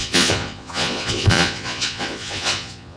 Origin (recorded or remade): remade